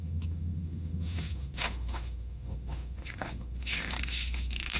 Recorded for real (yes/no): no